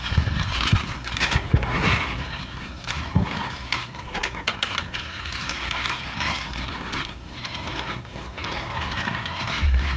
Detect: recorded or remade remade